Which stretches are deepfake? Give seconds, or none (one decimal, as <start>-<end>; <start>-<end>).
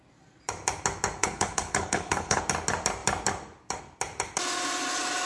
1.2-2.4